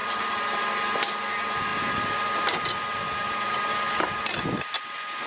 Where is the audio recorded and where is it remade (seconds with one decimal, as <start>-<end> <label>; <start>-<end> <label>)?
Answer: 0.0-5.3 recorded